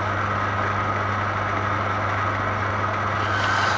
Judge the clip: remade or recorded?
recorded